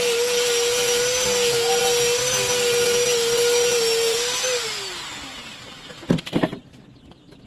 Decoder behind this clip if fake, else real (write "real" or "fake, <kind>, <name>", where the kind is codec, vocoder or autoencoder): real